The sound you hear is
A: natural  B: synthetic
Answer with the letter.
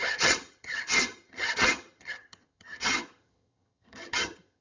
B